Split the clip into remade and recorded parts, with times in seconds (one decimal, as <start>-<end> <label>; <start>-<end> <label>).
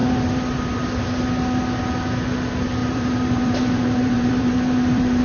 0.0-1.0 remade; 1.0-2.8 recorded; 2.8-5.2 remade